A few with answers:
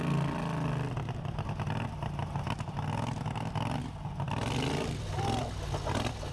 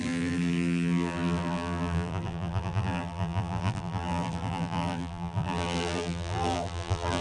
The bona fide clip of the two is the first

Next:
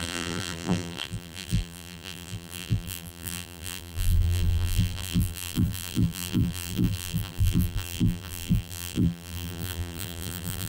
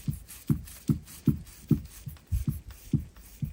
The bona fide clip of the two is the second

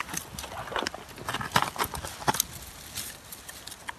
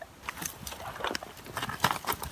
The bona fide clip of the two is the first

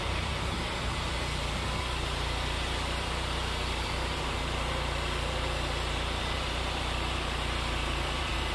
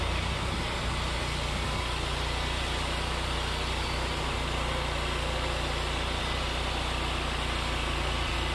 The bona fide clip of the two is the second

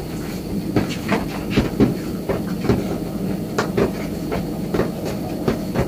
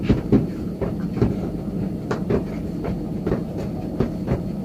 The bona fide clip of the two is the first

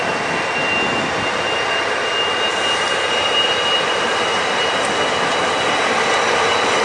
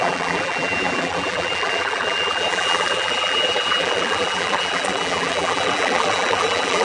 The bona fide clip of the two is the first